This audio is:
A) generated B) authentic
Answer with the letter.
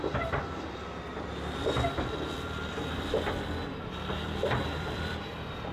A